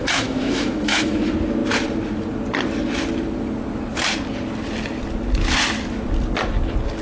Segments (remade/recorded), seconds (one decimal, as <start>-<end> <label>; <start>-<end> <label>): 0.0-1.2 remade; 1.2-7.0 recorded